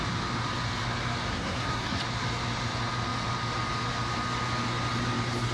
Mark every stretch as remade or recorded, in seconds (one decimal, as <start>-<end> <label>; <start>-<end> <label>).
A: 0.0-1.3 recorded; 1.3-2.0 remade; 2.0-5.5 recorded